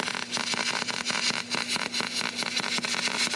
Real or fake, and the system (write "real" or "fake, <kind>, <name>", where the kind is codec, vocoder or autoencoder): real